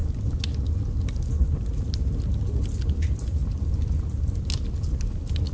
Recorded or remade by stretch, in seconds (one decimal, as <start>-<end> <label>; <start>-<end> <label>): 0.0-5.5 recorded